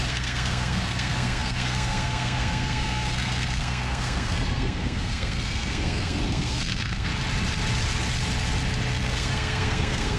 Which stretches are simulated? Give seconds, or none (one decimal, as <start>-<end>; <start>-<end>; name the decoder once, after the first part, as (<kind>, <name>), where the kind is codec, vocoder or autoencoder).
0.0-7.1 (codec, SNAC); 8.9-10.2